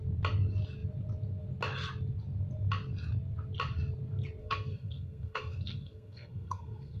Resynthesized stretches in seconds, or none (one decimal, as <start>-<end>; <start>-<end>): 4.4-7.0